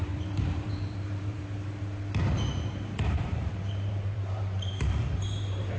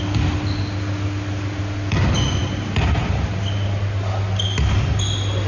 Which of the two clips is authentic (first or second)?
second